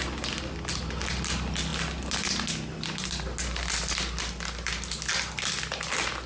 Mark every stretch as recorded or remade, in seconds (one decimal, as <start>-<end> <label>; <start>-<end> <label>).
0.0-6.3 recorded